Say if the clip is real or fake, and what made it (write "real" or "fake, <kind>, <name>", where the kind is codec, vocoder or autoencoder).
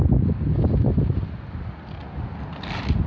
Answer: real